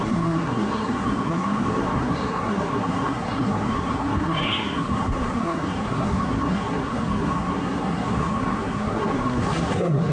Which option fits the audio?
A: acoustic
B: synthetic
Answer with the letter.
B